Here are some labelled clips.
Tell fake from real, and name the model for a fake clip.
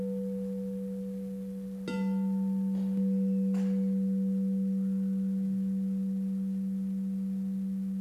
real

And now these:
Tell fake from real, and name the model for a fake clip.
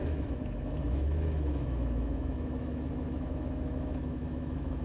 fake, autoencoder, DAC-VAE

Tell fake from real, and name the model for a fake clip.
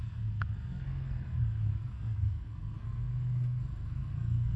fake, codec, SNAC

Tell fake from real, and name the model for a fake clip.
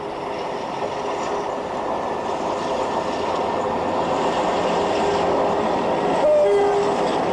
real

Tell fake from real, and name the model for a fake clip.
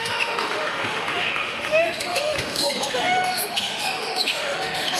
fake, autoencoder, DAC-VAE